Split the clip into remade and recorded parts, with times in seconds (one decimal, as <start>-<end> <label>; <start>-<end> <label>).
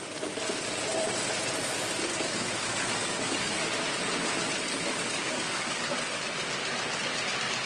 0.0-2.1 recorded; 2.1-3.7 remade; 3.7-4.7 recorded; 4.7-6.2 remade; 6.2-7.7 recorded